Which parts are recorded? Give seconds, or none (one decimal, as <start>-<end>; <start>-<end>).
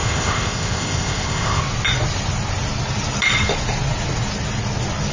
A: 1.6-5.1